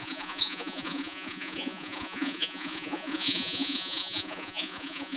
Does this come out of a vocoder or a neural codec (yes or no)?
yes